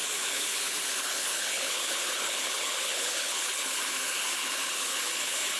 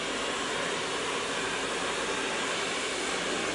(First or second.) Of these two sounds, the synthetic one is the first